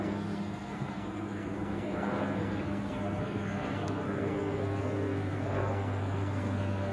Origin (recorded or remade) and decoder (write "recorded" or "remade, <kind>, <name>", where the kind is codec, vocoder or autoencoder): remade, codec, SNAC